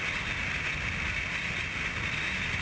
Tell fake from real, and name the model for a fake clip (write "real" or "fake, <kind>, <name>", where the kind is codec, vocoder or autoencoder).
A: real